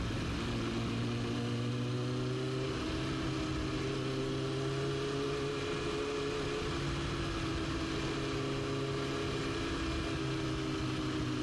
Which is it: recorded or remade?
recorded